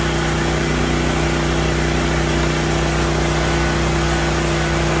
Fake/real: real